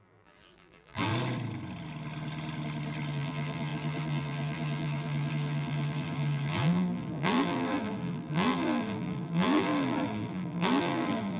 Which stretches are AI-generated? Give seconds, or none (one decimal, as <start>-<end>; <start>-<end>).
0.0-1.1; 3.1-11.4